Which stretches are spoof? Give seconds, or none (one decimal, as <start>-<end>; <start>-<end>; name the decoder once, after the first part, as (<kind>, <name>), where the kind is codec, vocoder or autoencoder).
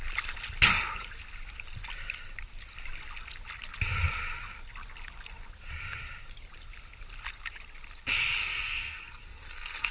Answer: 8.4-9.9 (codec, SNAC)